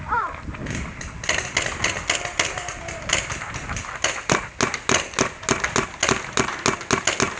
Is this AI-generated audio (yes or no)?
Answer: no